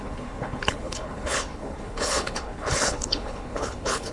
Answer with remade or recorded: remade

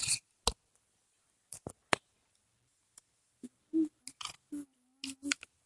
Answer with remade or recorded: recorded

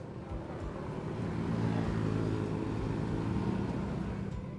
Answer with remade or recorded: recorded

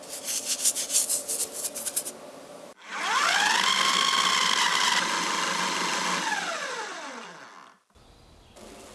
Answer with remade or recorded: recorded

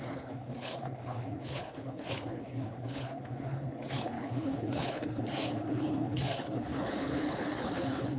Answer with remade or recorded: remade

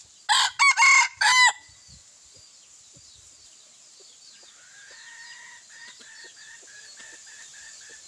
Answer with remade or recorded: recorded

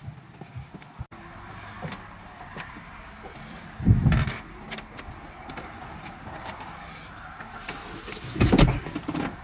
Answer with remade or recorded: recorded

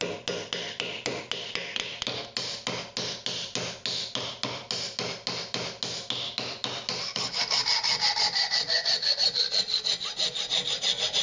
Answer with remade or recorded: recorded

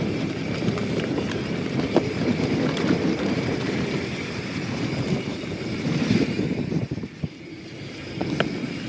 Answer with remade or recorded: recorded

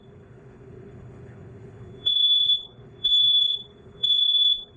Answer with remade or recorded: remade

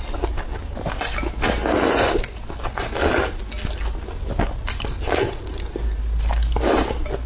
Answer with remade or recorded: recorded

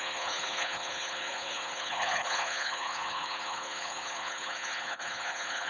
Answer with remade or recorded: remade